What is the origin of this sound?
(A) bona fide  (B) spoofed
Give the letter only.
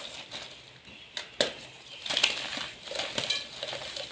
A